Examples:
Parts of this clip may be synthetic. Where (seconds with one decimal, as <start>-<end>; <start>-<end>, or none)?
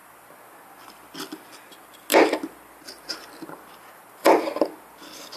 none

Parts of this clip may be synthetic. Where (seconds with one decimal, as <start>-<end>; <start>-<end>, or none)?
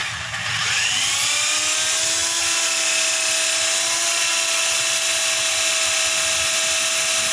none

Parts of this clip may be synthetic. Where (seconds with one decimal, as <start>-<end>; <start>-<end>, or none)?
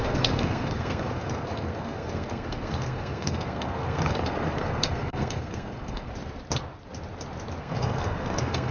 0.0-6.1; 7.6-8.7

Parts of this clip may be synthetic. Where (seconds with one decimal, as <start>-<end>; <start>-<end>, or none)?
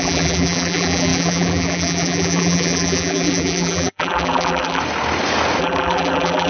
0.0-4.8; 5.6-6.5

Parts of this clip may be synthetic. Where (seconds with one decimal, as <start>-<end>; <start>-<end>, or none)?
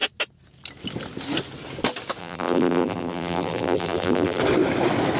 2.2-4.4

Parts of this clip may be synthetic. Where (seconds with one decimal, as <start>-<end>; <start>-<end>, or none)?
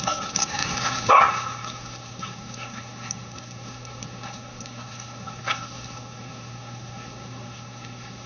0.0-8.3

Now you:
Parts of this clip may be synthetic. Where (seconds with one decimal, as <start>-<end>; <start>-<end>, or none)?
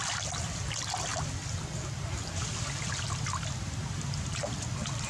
none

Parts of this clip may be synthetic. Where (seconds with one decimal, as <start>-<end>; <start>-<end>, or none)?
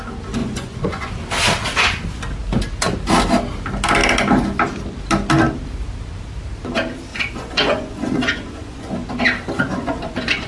0.4-1.1; 7.1-9.1; 9.7-10.5